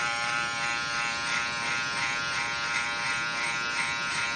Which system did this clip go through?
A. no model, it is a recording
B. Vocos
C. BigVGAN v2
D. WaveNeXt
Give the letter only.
C